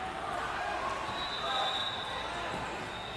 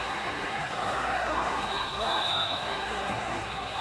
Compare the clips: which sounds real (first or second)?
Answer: first